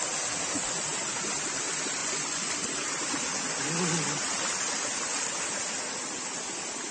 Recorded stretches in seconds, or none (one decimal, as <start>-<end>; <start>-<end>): 0.0-2.0; 2.5-6.9